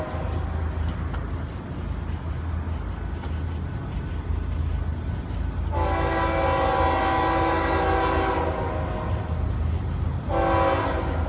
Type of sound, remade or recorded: recorded